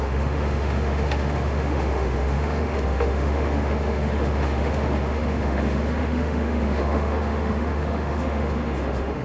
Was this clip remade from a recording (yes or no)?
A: yes